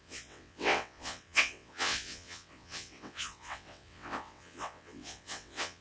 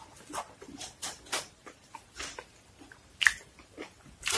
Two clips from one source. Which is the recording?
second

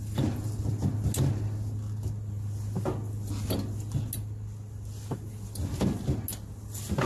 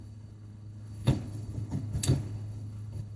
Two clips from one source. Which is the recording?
first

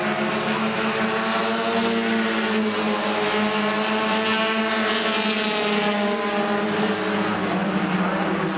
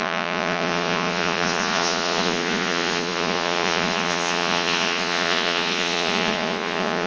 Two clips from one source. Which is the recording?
first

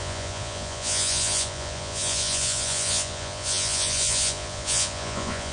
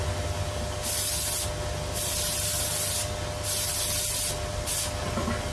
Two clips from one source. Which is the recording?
second